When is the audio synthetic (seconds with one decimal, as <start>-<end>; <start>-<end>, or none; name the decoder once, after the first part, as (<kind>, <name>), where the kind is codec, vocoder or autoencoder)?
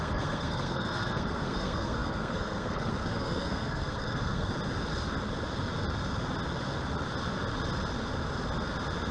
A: 0.0-4.5 (codec, SNAC)